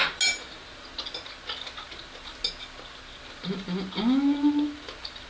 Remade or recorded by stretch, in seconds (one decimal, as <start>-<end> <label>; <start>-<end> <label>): 0.0-5.3 recorded